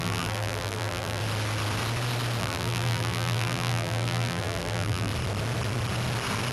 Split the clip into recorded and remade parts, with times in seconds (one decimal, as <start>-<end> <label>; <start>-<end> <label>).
0.0-1.2 remade; 1.2-2.4 recorded; 2.4-5.1 remade; 5.1-6.5 recorded